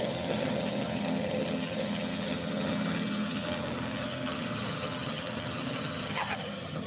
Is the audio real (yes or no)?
no